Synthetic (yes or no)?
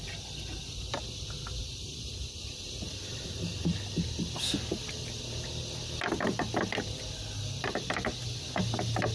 no